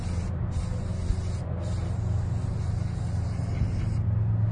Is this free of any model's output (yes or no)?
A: yes